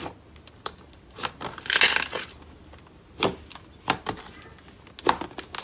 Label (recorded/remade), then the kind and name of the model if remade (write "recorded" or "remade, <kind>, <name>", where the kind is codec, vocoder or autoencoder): recorded